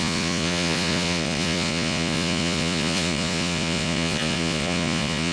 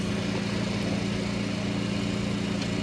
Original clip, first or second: second